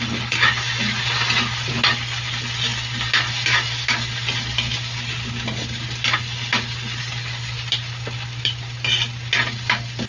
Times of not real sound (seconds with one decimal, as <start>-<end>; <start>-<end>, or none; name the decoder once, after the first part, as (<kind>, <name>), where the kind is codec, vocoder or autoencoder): none